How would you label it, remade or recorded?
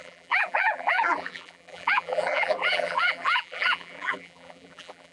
remade